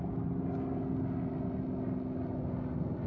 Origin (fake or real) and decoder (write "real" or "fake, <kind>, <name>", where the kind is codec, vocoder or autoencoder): real